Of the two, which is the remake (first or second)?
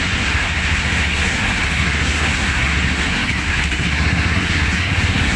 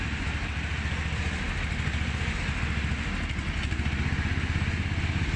first